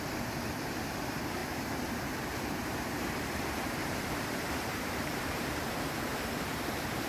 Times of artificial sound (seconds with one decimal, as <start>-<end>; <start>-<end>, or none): 0.0-7.1